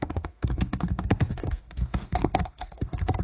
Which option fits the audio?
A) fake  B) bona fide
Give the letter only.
A